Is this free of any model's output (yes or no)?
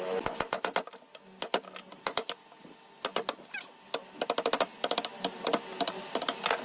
yes